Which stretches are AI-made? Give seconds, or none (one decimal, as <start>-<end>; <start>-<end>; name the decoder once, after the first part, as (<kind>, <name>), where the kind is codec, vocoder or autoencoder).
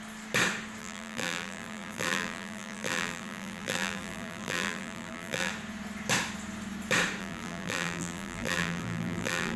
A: 0.8-5.5 (vocoder, BigVGAN v2); 7.2-9.6